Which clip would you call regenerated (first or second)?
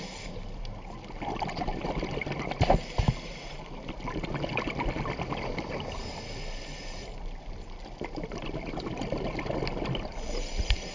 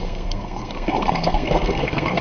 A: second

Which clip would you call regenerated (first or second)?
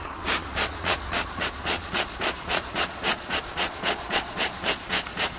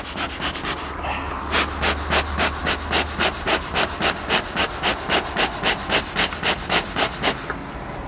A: first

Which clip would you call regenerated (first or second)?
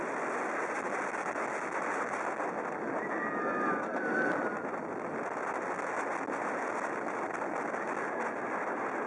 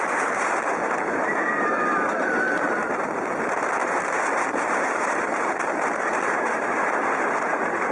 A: second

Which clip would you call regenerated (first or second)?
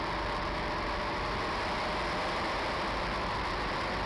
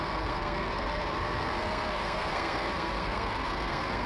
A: second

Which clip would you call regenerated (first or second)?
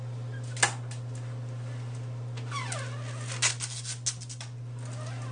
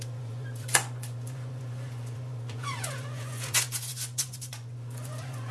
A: second